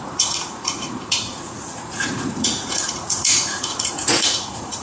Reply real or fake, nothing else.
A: fake